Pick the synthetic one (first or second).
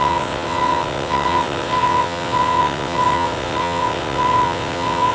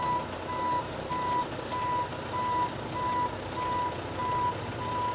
first